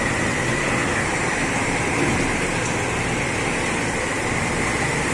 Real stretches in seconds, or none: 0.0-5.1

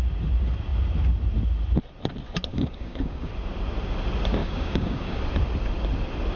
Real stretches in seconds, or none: 0.0-2.5; 3.3-4.4; 5.2-6.4

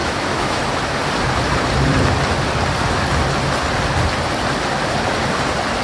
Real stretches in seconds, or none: 0.6-5.8